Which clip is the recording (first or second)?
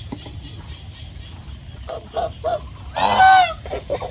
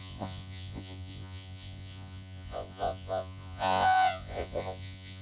first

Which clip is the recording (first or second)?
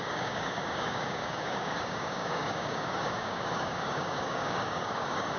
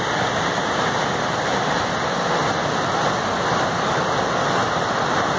second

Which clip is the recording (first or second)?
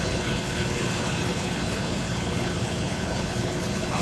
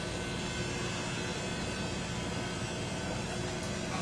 second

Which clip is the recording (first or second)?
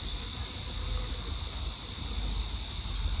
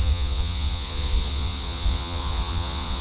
first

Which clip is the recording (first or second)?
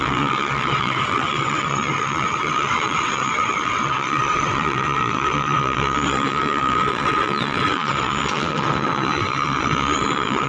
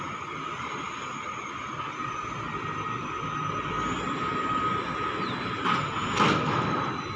second